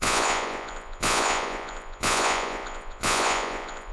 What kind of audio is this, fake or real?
fake